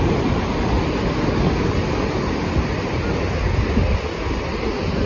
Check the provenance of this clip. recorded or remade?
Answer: recorded